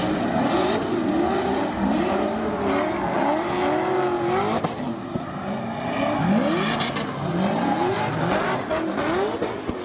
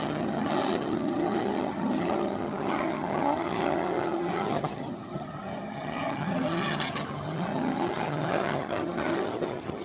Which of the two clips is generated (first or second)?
second